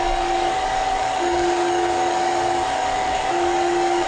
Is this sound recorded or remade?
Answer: remade